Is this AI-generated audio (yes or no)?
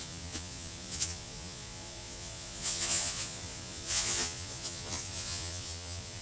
yes